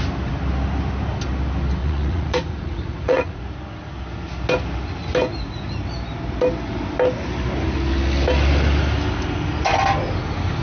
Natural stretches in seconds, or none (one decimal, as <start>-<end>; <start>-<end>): 0.0-1.8; 3.4-10.6